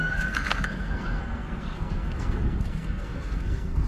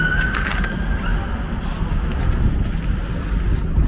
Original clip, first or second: second